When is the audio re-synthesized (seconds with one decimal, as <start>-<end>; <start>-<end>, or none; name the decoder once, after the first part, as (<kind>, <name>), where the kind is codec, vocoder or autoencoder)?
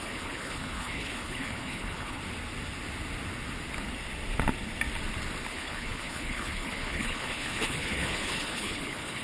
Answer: 0.0-2.2 (codec, HILCodec); 5.5-9.2